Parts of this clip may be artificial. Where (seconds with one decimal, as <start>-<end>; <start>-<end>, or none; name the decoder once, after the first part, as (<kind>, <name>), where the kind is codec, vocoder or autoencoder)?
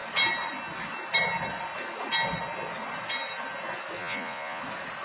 4.0-4.6 (vocoder, Vocos)